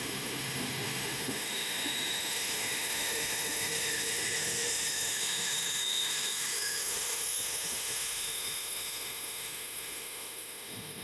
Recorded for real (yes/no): no